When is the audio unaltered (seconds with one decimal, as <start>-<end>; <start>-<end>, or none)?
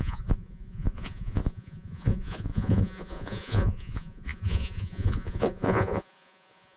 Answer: none